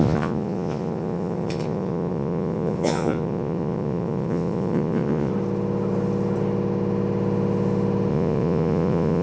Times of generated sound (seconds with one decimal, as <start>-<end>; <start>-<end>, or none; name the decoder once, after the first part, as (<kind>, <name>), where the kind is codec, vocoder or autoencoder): 0.0-5.3 (vocoder, Vocos); 8.1-9.2